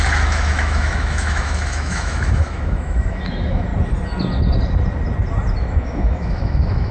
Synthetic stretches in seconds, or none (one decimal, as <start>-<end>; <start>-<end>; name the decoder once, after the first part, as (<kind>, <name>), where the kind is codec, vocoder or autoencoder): 0.0-3.7 (autoencoder, DAC-VAE); 5.6-6.9